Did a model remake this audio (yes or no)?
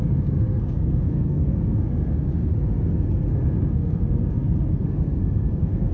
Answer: yes